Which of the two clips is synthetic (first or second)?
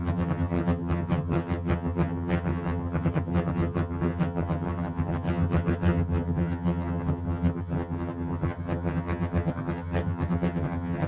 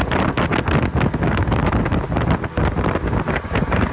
first